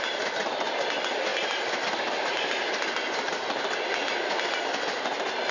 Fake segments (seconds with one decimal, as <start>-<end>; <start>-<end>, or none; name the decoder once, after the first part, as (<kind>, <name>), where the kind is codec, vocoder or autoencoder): none